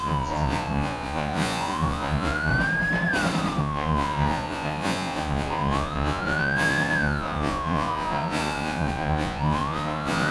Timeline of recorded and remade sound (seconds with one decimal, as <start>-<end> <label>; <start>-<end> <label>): 0.0-2.5 remade; 2.5-3.6 recorded; 3.6-10.3 remade